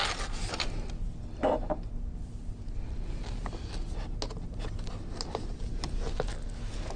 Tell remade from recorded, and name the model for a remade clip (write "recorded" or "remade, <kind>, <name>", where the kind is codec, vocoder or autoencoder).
recorded